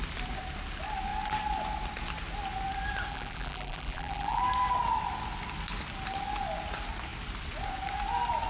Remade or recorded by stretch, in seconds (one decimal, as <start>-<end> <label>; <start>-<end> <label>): 0.0-3.1 recorded; 3.1-4.4 remade; 4.4-8.5 recorded